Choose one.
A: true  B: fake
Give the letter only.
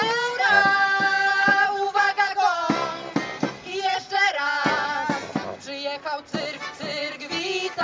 A